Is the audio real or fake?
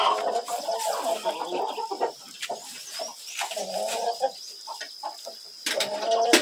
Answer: real